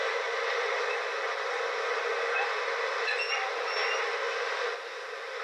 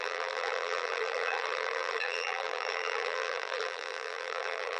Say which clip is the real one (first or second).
first